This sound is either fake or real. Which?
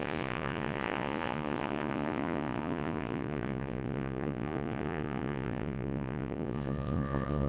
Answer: fake